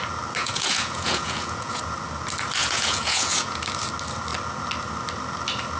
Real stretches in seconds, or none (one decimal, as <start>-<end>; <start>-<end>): 0.0-0.4; 1.8-2.6; 3.6-5.8

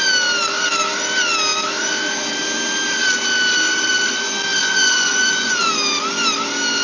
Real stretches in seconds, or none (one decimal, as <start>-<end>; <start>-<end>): 0.0-4.6; 5.7-6.8

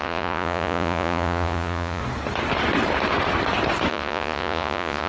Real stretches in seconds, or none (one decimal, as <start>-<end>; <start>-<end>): 2.0-3.9